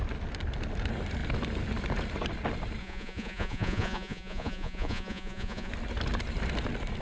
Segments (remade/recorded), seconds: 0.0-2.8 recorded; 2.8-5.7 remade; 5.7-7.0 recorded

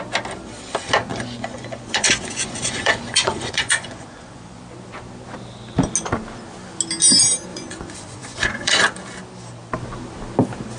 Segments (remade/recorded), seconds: 0.0-1.1 recorded; 1.1-4.6 remade; 4.6-7.5 recorded; 7.5-8.8 remade; 8.8-10.8 recorded

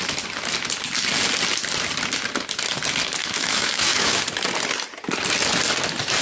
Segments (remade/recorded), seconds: 0.0-3.2 recorded; 3.2-4.2 remade; 4.2-6.2 recorded